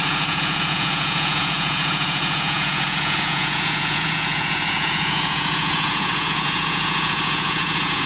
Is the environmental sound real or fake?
fake